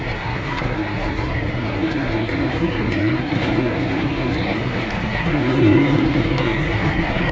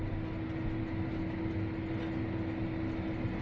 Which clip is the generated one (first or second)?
first